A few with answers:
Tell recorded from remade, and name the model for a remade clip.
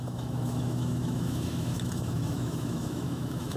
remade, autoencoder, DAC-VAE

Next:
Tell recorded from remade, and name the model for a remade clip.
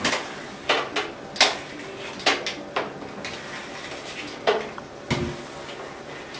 recorded